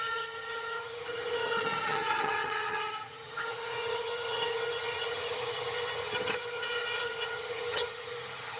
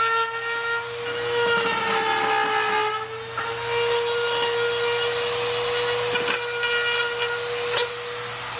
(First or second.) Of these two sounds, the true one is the second